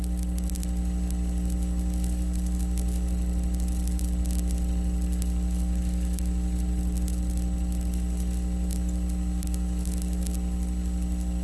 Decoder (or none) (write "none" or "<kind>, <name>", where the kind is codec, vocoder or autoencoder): none